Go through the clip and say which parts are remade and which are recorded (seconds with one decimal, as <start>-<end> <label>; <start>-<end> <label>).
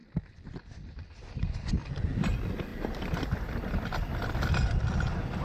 0.0-2.0 remade; 2.0-2.7 recorded; 2.7-5.4 remade